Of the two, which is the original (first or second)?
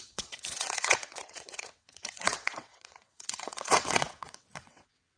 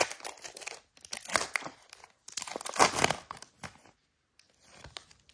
second